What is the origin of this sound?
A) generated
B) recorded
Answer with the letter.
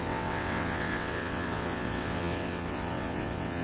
A